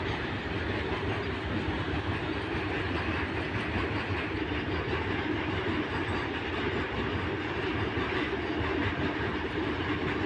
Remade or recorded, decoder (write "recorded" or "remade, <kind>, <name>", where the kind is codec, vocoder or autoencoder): recorded